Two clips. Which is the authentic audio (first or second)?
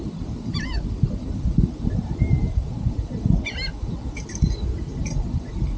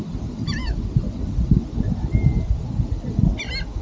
second